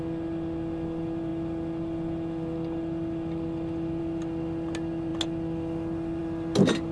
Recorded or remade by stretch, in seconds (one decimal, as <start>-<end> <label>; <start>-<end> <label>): 0.0-6.9 recorded